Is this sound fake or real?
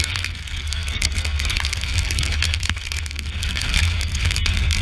fake